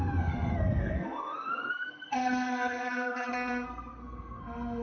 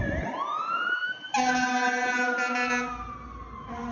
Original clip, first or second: second